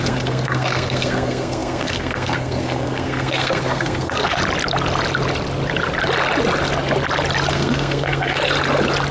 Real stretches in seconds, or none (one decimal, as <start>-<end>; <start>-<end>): 4.4-7.5; 8.4-9.1